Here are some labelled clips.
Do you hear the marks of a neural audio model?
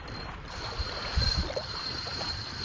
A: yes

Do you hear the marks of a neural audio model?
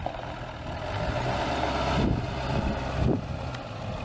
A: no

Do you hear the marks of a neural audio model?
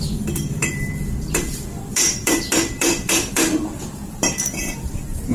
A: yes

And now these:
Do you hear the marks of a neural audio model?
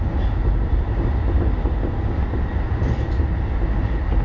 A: no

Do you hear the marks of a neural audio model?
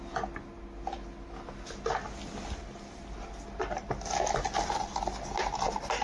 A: no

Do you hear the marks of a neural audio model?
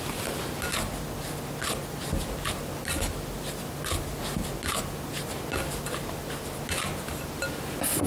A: no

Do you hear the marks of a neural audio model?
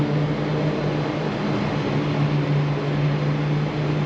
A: no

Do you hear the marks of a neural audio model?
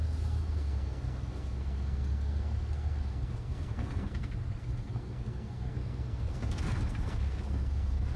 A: yes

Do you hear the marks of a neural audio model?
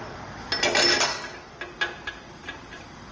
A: no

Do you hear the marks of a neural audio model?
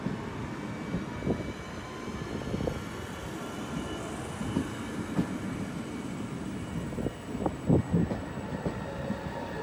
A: no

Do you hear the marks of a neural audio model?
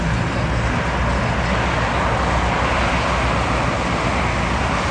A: no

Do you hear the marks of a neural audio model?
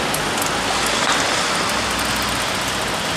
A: no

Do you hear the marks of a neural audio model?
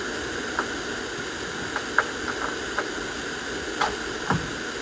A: no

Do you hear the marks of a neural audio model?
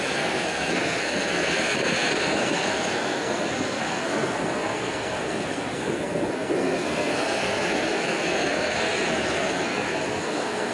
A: yes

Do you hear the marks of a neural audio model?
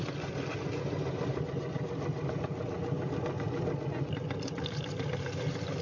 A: no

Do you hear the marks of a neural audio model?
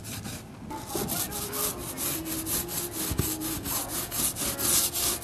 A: no